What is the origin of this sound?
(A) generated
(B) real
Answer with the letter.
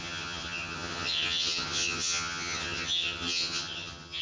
A